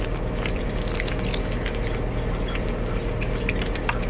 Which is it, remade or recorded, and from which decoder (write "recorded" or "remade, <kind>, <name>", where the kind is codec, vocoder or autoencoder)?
recorded